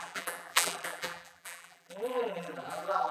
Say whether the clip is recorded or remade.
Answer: remade